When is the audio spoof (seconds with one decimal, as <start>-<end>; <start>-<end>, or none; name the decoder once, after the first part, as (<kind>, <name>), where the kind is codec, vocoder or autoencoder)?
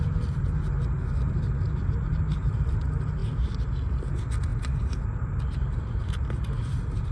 none